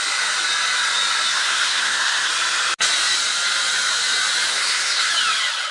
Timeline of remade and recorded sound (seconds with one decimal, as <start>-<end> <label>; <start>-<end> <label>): 0.0-1.4 recorded; 1.4-2.3 remade; 2.3-4.5 recorded; 4.5-5.1 remade; 5.1-5.7 recorded

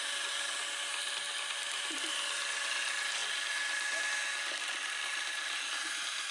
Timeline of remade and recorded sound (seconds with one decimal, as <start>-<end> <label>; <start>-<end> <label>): 0.0-6.3 recorded

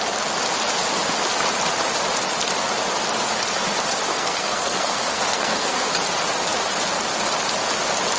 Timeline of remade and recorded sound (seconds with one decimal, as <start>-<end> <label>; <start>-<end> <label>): 0.0-4.1 recorded; 4.1-5.9 remade; 5.9-8.2 recorded

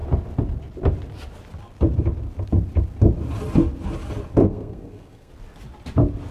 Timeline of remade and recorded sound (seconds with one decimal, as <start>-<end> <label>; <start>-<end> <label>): 0.0-4.4 recorded; 4.4-5.3 remade; 5.3-6.3 recorded

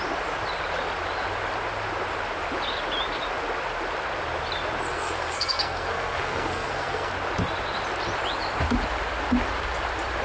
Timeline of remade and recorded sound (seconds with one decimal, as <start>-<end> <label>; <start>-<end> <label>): 0.0-4.9 recorded; 4.9-7.1 remade; 7.1-10.2 recorded

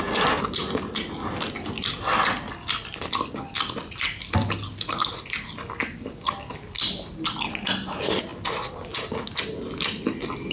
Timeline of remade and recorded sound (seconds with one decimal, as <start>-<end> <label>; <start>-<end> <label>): 0.0-10.5 recorded

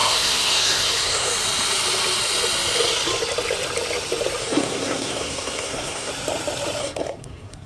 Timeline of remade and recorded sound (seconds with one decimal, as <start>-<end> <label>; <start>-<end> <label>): 0.0-1.3 remade; 1.3-4.4 recorded; 4.4-6.1 remade; 6.1-6.8 recorded; 6.8-7.7 remade